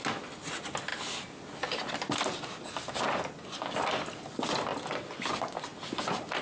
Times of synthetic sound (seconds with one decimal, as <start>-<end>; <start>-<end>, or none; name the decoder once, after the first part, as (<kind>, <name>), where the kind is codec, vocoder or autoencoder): none